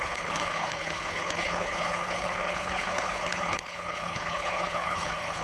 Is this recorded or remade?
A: remade